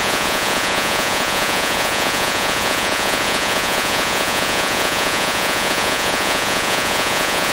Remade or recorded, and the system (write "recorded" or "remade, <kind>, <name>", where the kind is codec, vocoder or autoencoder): remade, vocoder, Vocos